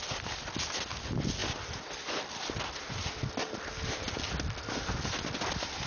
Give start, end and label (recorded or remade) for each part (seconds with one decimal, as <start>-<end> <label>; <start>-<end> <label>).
0.0-5.9 recorded